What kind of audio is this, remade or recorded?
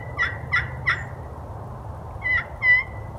recorded